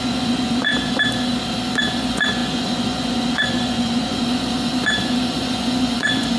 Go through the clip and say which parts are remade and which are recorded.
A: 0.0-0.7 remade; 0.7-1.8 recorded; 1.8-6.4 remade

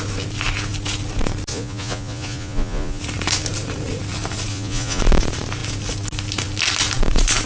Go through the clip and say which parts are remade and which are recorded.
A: 0.0-1.5 recorded; 1.5-3.0 remade; 3.0-4.5 recorded; 4.5-5.0 remade; 5.0-7.5 recorded